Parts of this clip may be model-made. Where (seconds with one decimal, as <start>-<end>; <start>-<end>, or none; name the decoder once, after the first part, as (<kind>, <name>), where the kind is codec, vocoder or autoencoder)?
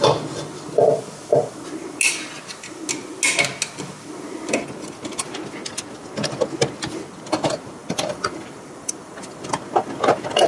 7.8-9.4 (vocoder, BigVGAN v2)